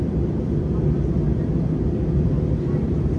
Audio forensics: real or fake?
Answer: real